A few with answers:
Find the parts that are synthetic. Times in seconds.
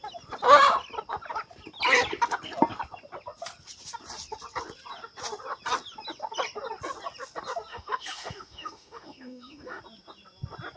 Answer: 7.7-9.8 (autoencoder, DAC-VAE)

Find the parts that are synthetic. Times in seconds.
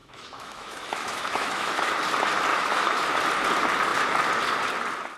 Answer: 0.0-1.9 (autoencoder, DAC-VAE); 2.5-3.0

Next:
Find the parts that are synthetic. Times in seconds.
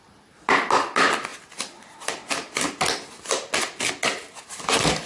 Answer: none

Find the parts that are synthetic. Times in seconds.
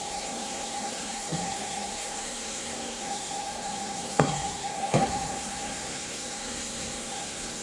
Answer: 0.0-7.6 (codec, SNAC)